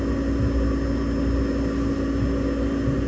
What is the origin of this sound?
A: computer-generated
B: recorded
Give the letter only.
B